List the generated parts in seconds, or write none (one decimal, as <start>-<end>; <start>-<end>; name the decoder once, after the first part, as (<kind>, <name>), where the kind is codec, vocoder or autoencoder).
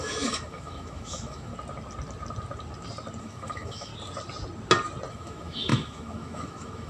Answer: 0.0-1.5 (autoencoder, DAC-VAE); 3.2-3.9; 5.1-6.9